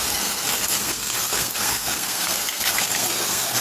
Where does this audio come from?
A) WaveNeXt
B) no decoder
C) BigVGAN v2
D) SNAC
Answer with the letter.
D